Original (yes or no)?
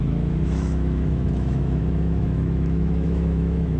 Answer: no